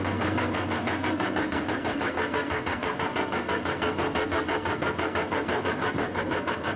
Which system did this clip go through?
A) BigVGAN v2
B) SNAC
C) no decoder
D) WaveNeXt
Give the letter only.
B